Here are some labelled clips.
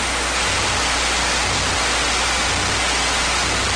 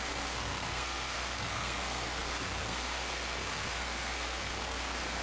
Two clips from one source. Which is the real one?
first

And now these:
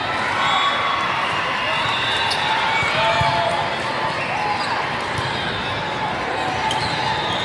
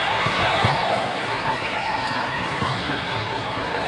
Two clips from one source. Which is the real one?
first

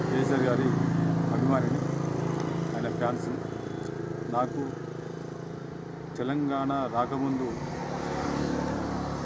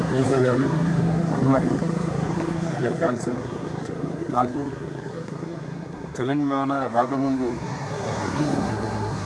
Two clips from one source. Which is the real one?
first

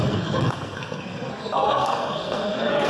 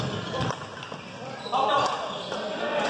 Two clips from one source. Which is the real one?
second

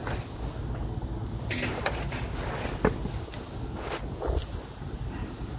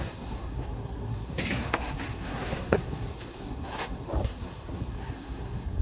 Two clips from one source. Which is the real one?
first